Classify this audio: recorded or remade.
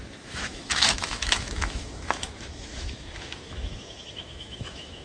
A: remade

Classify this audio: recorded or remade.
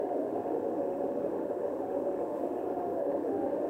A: remade